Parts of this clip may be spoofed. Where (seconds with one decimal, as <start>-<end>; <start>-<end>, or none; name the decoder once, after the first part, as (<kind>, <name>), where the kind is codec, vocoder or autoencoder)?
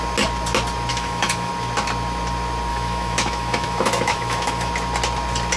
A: 0.9-1.5 (autoencoder, DAC-VAE); 2.7-4.7